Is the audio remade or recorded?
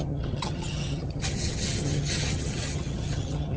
remade